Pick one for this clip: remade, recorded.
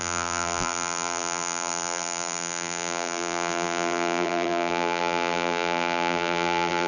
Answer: remade